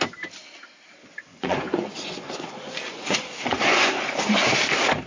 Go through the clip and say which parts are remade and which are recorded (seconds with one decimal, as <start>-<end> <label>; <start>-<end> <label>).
0.0-1.3 recorded; 1.3-4.0 remade; 4.0-5.1 recorded